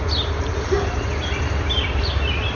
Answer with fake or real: real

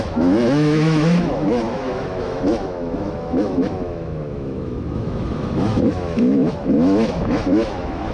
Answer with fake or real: fake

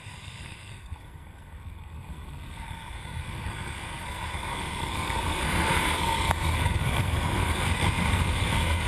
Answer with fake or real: fake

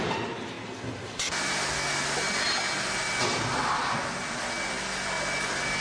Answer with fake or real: real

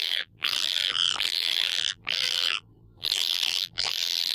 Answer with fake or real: fake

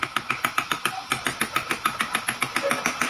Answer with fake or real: real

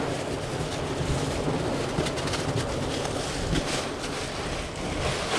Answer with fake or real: real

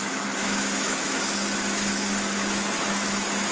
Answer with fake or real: fake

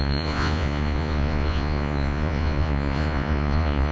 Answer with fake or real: fake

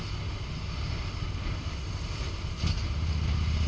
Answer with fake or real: real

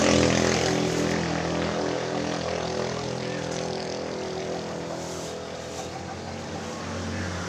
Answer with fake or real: real